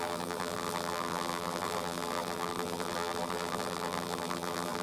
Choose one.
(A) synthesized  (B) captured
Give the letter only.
A